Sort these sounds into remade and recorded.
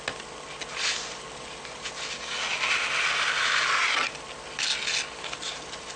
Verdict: recorded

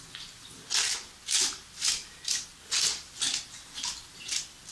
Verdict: recorded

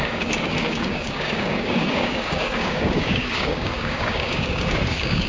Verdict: remade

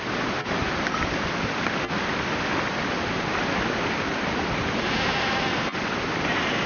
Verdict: recorded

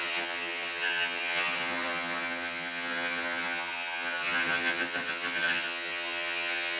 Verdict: remade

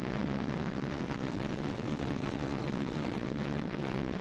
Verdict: remade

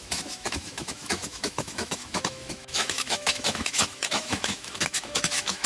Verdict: remade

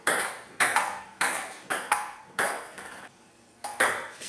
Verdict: remade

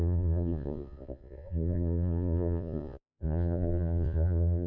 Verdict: remade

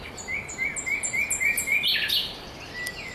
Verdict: recorded